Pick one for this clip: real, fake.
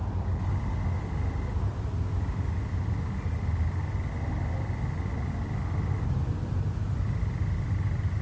real